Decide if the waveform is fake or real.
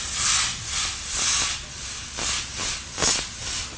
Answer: real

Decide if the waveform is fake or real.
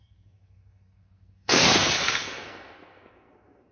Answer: fake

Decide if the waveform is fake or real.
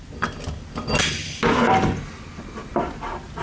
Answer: real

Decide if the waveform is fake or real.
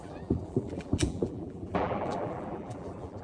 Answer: fake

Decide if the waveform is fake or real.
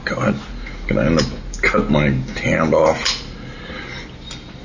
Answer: real